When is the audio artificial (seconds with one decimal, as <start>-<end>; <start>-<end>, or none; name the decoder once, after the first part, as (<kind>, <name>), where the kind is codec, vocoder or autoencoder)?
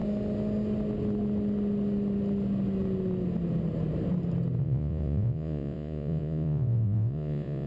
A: 4.6-7.7 (vocoder, Vocos)